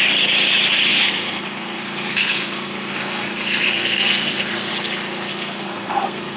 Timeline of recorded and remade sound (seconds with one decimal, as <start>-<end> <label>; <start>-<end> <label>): 0.0-0.9 recorded; 0.9-4.7 remade; 4.7-5.3 recorded; 5.3-6.4 remade